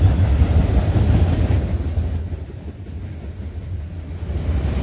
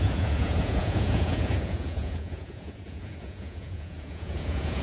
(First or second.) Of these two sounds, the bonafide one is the first